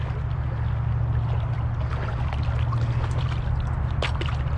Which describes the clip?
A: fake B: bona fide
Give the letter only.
B